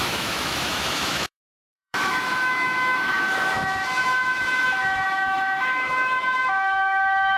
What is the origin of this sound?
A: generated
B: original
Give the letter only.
A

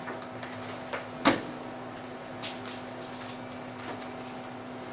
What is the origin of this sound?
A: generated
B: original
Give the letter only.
B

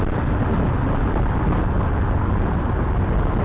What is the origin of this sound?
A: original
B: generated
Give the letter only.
A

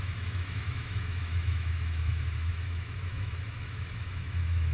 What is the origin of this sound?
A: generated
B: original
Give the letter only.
A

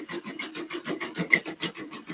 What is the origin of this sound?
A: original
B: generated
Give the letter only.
A